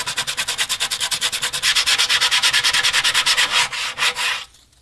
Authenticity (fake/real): real